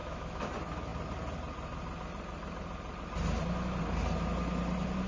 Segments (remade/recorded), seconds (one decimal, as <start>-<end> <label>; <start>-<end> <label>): 0.0-0.5 remade; 0.5-5.1 recorded